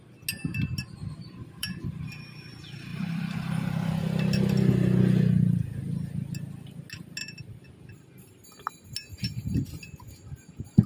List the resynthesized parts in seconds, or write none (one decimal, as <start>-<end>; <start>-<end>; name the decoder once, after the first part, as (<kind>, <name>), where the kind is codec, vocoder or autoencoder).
1.0-1.9 (vocoder, BigVGAN v2); 2.9-4.0; 7.2-8.8